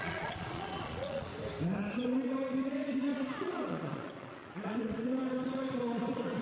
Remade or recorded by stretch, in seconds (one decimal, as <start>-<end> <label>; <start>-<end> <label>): 0.0-1.3 remade; 1.3-1.9 recorded; 1.9-6.4 remade